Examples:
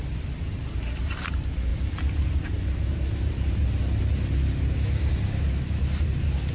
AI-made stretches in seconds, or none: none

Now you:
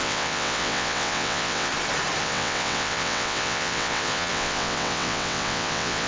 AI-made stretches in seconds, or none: 0.0-1.7 (vocoder, WaveNeXt); 2.2-6.1